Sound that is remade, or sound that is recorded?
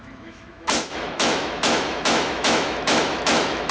remade